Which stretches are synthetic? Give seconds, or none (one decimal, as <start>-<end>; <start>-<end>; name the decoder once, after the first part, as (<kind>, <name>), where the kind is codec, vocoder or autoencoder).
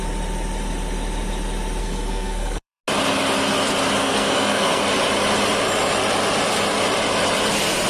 1.8-2.8 (codec, SNAC); 4.0-4.8